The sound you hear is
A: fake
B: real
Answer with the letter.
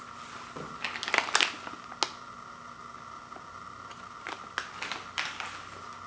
B